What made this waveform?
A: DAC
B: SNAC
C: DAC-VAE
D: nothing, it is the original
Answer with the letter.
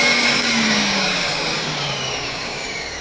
A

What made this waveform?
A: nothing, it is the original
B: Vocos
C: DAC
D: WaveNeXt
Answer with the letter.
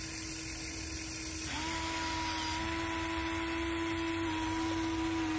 A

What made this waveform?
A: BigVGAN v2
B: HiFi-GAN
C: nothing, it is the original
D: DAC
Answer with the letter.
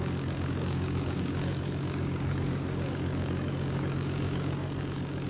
D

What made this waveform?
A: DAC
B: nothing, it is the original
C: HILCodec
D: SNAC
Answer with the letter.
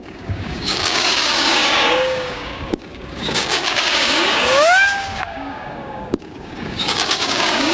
A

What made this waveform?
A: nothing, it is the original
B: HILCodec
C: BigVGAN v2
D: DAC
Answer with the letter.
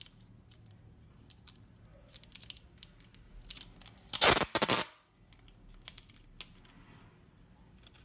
A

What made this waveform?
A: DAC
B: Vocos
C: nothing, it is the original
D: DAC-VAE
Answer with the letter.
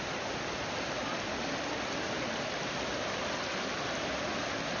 C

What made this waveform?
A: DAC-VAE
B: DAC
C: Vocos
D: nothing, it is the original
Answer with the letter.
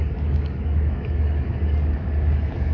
B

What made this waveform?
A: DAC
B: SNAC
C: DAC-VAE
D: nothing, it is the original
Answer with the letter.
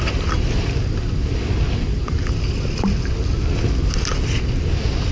D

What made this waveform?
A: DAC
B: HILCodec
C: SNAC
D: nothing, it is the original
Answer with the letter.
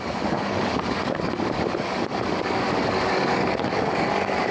A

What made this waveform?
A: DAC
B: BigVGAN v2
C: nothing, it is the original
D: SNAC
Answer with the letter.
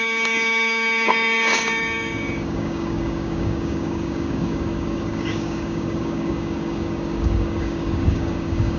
A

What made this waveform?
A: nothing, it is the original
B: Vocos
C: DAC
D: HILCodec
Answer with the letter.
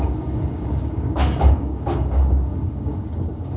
C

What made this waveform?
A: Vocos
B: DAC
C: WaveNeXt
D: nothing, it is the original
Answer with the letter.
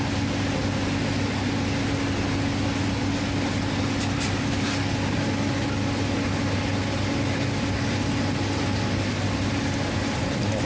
D